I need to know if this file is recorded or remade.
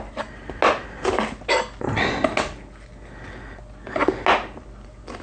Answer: recorded